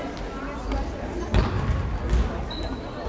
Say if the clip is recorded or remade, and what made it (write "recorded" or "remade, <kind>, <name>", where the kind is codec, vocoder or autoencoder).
recorded